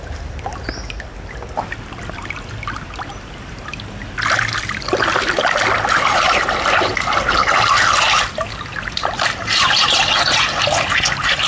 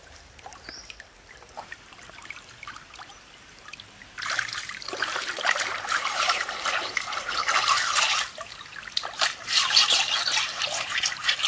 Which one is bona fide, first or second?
first